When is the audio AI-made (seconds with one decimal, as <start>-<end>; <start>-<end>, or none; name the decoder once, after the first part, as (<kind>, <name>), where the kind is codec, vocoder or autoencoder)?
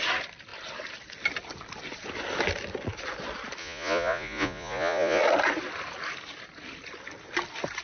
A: 3.6-5.2 (vocoder, Vocos)